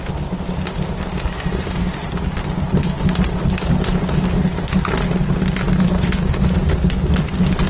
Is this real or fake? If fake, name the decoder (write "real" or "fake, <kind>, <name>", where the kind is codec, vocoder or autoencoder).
real